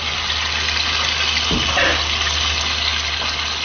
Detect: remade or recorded recorded